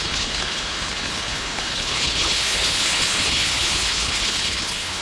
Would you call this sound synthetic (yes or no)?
yes